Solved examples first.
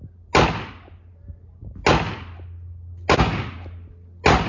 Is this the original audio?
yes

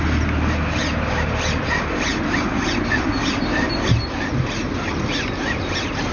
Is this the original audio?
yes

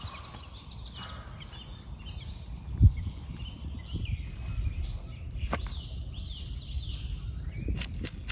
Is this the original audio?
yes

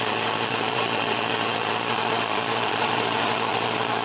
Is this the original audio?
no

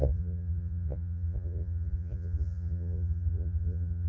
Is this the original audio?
no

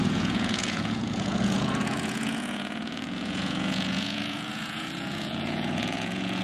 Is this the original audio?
no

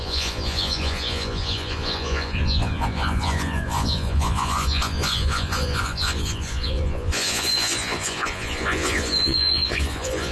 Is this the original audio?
no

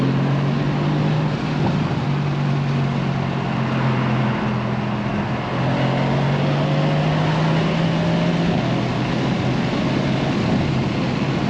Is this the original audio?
yes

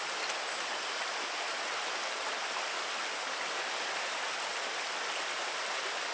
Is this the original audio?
yes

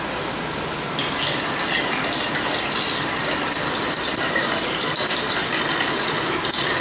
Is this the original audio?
yes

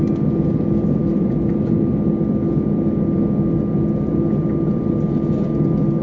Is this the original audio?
yes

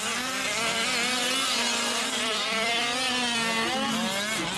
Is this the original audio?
yes